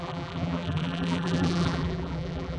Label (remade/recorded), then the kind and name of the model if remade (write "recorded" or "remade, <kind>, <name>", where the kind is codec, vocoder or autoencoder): remade, vocoder, BigVGAN v2